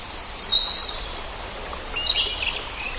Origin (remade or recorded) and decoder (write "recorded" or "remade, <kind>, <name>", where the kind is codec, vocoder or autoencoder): recorded